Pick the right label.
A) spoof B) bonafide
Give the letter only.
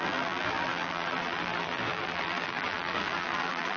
A